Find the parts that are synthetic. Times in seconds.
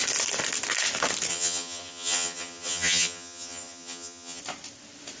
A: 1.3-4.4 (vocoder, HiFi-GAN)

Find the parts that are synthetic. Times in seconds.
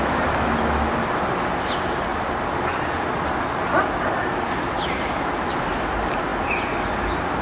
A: none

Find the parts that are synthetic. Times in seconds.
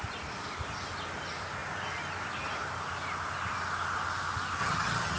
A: 4.6-5.2 (vocoder, HiFi-GAN)